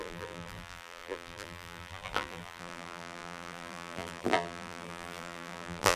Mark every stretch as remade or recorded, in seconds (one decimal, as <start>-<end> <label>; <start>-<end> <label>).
0.0-6.0 remade